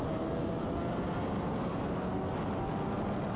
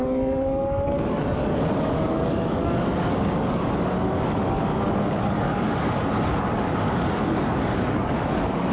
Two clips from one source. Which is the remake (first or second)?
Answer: second